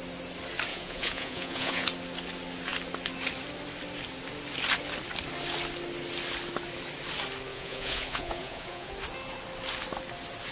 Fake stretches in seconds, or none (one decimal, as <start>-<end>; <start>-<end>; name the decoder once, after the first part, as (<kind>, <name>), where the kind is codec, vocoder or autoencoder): 0.7-1.9 (vocoder, Vocos); 7.5-8.9